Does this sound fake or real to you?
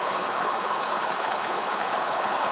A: fake